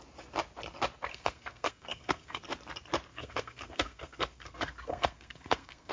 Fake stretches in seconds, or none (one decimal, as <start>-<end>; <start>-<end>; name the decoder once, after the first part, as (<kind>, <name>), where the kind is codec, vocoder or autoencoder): 1.1-2.4 (codec, SNAC); 3.1-5.9

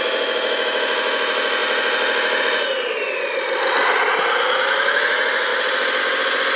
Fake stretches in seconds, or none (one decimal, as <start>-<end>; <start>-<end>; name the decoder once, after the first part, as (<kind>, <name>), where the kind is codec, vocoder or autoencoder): 5.5-6.0 (vocoder, BigVGAN v2)

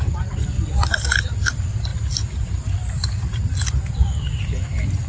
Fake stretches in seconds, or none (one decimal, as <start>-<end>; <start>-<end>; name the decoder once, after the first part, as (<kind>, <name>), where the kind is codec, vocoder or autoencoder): none